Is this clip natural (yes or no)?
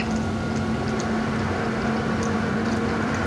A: yes